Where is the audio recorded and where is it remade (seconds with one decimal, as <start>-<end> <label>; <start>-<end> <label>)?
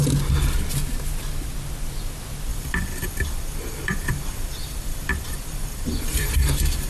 0.0-2.5 recorded; 2.5-6.9 remade